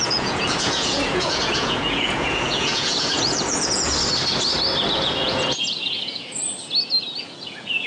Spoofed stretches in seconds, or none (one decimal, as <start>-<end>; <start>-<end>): 0.0-3.9; 4.9-6.4; 7.2-7.9